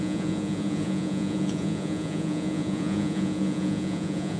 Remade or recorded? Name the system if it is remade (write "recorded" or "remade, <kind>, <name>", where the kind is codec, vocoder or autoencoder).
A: remade, vocoder, Vocos